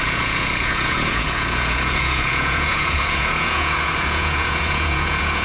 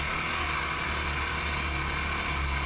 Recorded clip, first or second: second